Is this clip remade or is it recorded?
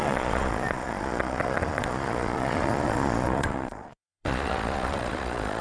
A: remade